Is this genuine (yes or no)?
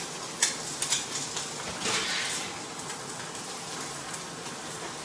yes